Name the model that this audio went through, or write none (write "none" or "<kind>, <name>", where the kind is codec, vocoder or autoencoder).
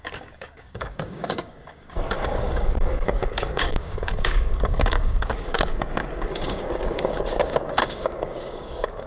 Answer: codec, DAC